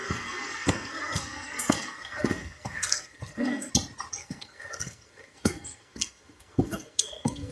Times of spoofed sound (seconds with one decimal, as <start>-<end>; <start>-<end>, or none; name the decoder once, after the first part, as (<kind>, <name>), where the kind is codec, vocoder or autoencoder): 0.0-3.7 (codec, SNAC); 4.2-7.5